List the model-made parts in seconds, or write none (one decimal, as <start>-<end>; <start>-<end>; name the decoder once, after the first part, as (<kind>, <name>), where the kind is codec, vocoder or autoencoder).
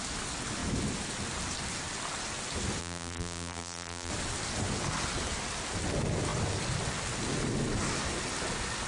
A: 2.8-4.1 (vocoder, BigVGAN v2)